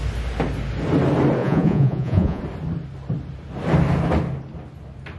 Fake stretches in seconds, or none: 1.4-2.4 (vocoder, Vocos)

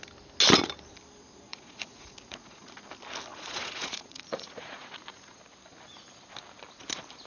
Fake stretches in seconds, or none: 1.5-2.8 (vocoder, Vocos); 3.3-5.4

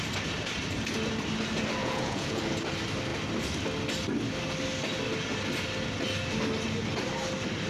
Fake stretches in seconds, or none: 1.8-2.4 (vocoder, Vocos)

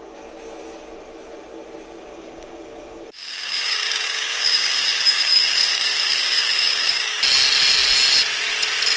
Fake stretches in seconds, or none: 2.1-7.2 (codec, DAC)